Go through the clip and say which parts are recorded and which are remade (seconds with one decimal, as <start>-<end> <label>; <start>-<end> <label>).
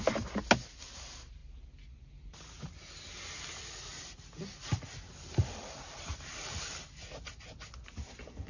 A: 0.0-8.5 recorded